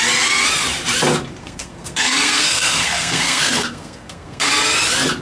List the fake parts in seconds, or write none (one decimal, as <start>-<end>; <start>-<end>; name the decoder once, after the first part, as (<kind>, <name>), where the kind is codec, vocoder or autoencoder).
1.4-4.5 (codec, SNAC)